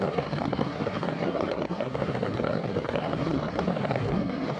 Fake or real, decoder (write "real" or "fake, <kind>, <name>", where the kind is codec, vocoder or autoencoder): fake, codec, SNAC